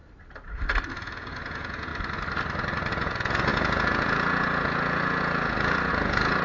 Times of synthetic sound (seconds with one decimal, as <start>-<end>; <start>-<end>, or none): 0.9-1.9; 2.9-6.4